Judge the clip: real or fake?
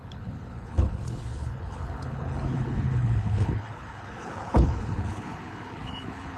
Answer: fake